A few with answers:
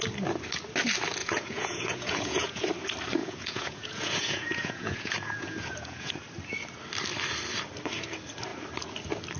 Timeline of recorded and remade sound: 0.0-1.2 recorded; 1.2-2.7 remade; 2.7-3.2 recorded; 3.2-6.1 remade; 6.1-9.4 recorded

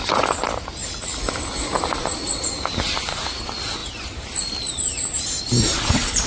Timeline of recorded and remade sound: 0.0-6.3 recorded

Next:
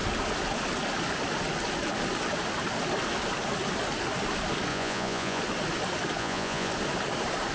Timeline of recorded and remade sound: 0.0-4.7 recorded; 4.7-5.4 remade; 5.4-6.2 recorded; 6.2-6.7 remade; 6.7-7.5 recorded

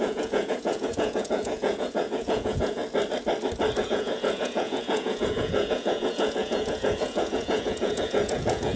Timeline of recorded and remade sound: 0.0-2.8 remade; 2.8-3.8 recorded; 3.8-8.8 remade

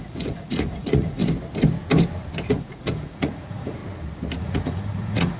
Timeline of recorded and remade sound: 0.0-1.2 remade; 1.2-2.5 recorded; 2.5-3.8 remade; 3.8-4.4 recorded; 4.4-5.4 remade